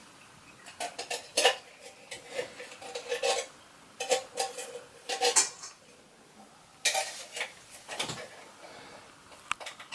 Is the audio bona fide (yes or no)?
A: yes